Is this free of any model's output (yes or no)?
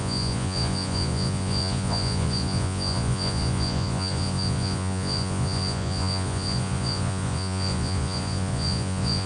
no